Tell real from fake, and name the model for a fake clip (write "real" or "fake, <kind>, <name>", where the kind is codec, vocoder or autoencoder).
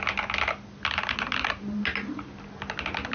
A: real